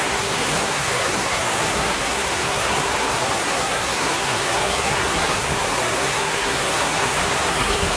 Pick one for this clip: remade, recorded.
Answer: remade